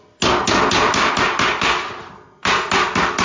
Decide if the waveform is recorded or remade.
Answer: recorded